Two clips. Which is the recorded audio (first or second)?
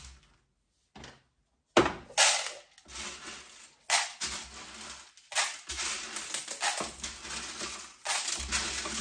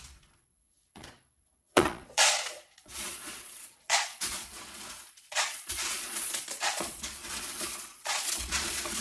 first